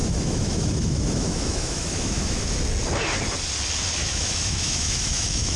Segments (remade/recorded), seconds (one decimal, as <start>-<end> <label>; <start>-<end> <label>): 0.0-2.4 remade; 2.4-4.0 recorded; 4.0-5.6 remade